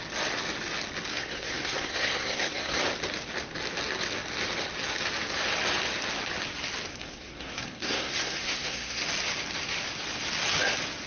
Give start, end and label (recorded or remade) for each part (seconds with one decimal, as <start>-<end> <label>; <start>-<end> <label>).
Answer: 0.0-1.1 recorded; 1.1-2.8 remade; 2.8-6.9 recorded; 6.9-9.0 remade; 9.0-11.1 recorded